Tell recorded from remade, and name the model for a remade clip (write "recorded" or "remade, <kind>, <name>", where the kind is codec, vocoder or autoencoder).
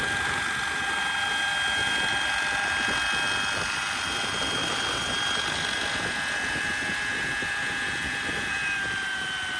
recorded